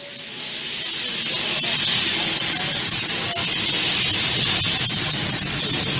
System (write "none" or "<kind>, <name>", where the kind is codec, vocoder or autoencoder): none